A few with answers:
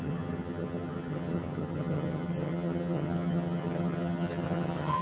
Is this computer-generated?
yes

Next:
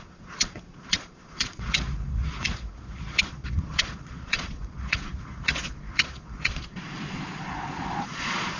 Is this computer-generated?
yes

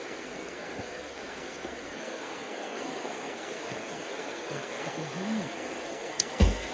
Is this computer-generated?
yes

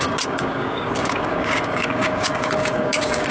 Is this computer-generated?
yes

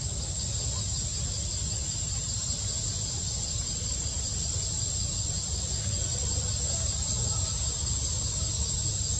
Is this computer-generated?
no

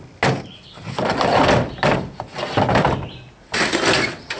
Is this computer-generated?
no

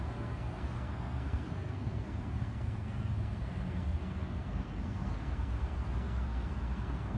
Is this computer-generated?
yes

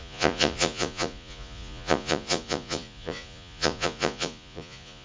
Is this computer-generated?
yes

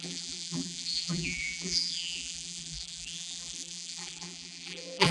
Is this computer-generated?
yes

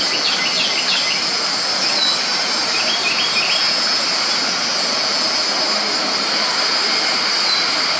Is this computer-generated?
no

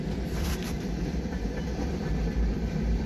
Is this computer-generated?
yes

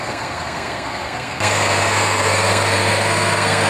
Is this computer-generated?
yes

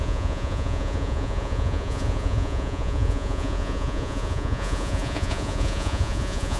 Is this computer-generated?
yes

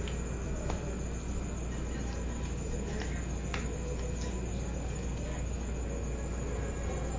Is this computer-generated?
no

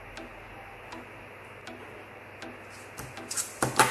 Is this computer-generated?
no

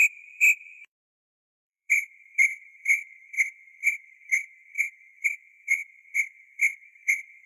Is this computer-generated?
yes